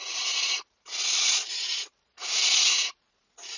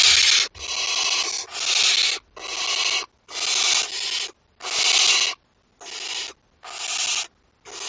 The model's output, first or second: first